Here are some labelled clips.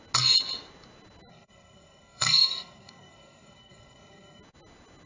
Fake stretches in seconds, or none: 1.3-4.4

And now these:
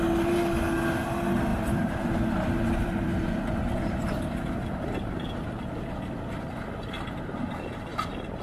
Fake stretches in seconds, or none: 1.5-4.1; 7.9-8.4